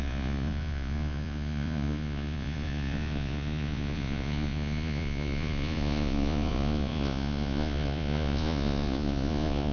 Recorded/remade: remade